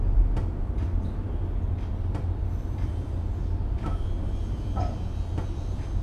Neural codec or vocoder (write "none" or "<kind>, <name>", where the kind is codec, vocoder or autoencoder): vocoder, BigVGAN v2